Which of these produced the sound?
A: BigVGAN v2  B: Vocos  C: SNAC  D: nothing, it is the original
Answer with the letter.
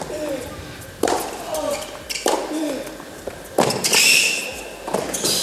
D